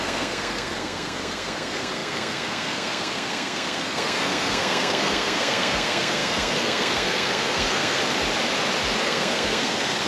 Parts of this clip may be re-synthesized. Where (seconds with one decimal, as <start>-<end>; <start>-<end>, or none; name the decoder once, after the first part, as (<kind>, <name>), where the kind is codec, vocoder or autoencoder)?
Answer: 0.0-8.0 (codec, SNAC); 9.0-10.1